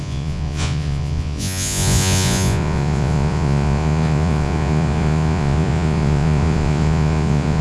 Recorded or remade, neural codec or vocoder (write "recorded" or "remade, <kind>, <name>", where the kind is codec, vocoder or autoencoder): remade, vocoder, Vocos